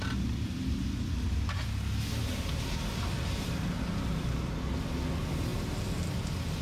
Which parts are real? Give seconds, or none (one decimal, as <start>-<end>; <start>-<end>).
0.0-2.2; 4.2-6.6